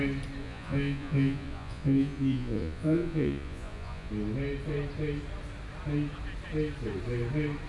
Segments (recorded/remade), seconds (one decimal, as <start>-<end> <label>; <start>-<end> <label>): 0.0-0.4 recorded; 0.4-4.1 remade; 4.1-7.7 recorded